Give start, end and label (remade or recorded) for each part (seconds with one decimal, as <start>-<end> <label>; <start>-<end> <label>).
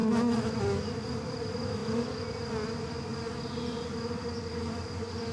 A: 0.0-5.3 recorded